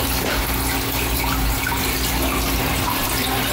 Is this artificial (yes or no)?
no